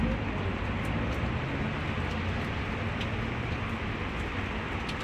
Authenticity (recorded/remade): recorded